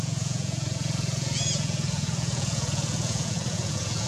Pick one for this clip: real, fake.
fake